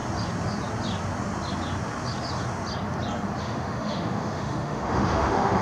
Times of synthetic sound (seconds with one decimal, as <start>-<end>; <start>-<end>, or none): 3.4-5.6